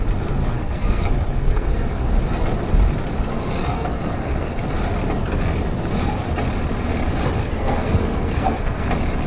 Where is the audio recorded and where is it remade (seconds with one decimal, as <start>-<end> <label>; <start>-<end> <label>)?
0.0-0.4 recorded; 0.4-2.1 remade; 2.1-3.3 recorded; 3.3-4.6 remade; 4.6-7.4 recorded; 7.4-8.9 remade; 8.9-9.3 recorded